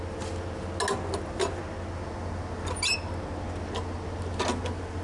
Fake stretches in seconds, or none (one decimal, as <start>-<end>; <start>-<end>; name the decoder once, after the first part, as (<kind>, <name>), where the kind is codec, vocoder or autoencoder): none